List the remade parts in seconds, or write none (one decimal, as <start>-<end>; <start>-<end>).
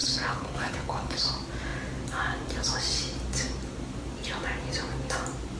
0.0-1.2